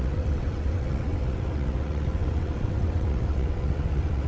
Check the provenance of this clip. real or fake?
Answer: fake